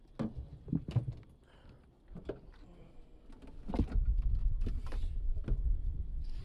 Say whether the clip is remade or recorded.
recorded